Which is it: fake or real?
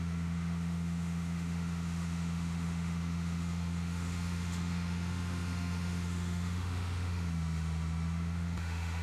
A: fake